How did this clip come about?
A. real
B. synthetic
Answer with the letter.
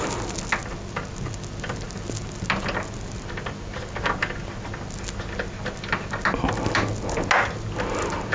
A